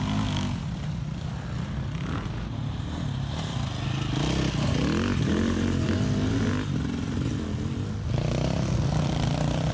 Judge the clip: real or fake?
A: real